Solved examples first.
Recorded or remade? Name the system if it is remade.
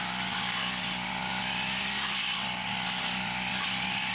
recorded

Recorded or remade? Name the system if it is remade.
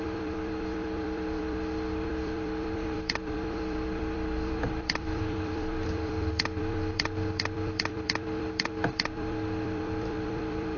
remade, vocoder, BigVGAN v2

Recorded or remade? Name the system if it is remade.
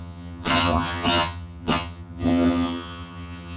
remade, vocoder, HiFi-GAN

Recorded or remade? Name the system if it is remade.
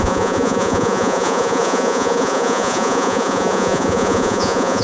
remade, vocoder, Vocos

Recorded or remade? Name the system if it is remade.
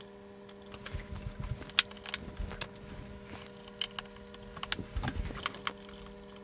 recorded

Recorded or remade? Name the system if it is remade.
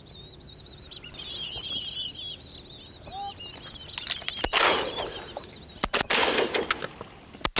recorded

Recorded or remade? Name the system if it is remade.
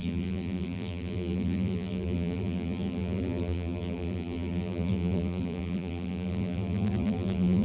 remade, vocoder, BigVGAN v2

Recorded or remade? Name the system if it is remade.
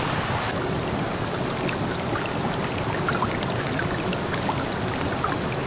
recorded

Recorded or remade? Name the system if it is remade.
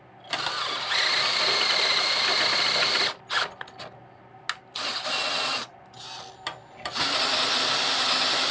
recorded